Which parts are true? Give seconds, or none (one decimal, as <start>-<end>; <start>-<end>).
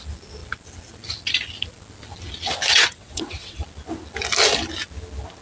0.0-2.7; 3.6-5.4